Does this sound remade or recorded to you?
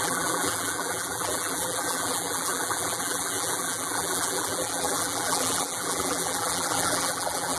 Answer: remade